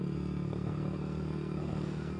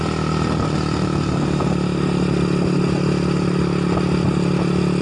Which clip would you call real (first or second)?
second